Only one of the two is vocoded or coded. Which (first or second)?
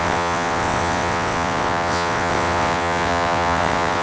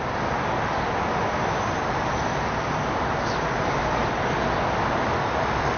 first